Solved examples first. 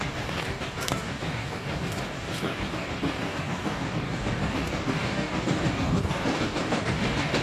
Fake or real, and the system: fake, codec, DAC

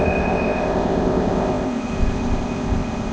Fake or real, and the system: fake, codec, ZipCodec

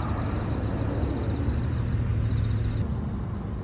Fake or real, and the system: real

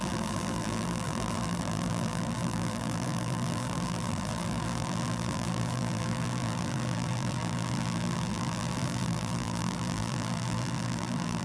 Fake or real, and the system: fake, vocoder, BigVGAN v2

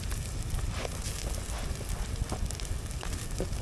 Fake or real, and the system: real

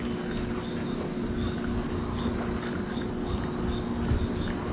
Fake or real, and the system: real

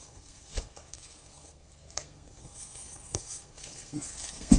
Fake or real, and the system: fake, codec, SNAC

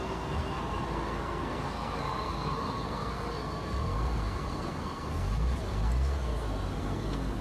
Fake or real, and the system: fake, codec, SNAC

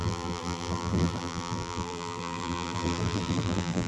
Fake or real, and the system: fake, vocoder, BigVGAN v2